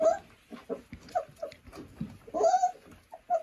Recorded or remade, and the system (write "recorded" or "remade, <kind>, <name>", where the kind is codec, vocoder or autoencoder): recorded